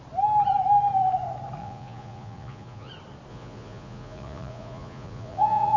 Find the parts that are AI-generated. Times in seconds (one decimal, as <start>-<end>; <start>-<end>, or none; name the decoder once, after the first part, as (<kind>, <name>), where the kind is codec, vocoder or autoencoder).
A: 1.6-2.9 (vocoder, Vocos); 3.3-5.8